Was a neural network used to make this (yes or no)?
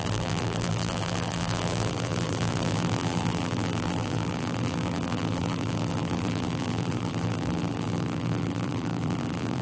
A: yes